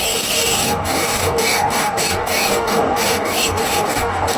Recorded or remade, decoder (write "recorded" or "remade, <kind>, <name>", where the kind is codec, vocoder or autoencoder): remade, codec, DAC